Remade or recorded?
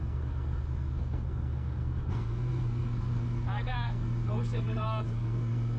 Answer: remade